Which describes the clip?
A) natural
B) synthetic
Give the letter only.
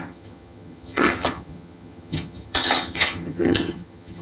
B